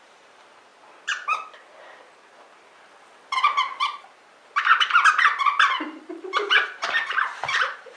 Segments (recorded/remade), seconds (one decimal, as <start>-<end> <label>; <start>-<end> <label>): 0.0-0.7 remade; 0.7-3.3 recorded; 3.3-8.0 remade